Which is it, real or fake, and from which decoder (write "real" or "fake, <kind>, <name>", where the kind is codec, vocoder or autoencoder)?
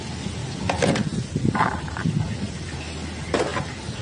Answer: real